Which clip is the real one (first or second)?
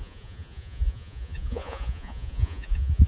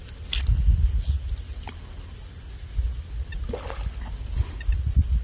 second